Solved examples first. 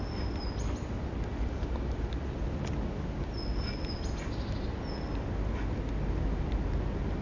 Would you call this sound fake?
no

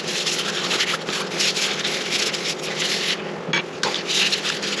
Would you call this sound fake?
no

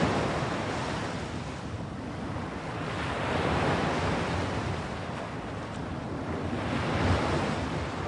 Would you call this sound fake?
no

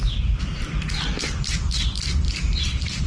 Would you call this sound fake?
no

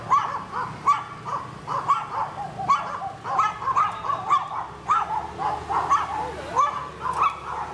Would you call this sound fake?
no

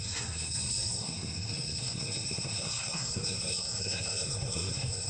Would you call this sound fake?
yes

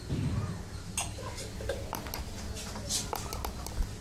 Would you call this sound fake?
no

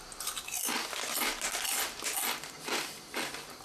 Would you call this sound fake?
no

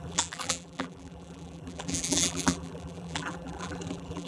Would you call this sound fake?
yes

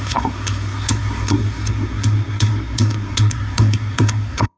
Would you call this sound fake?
yes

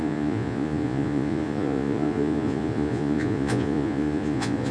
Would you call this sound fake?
yes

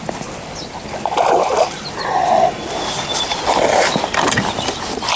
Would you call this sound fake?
no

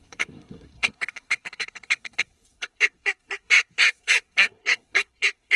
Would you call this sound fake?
yes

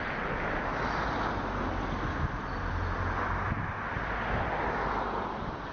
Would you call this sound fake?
no